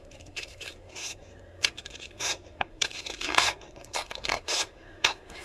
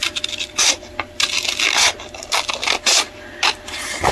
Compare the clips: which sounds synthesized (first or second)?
first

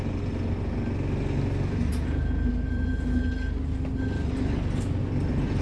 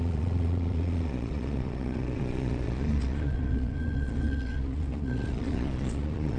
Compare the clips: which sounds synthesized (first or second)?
second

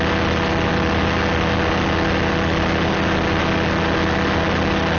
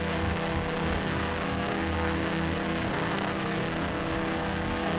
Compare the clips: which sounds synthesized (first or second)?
second